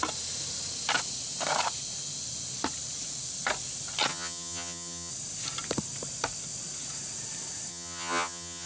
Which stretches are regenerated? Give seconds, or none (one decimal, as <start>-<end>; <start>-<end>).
4.1-5.1; 7.7-8.7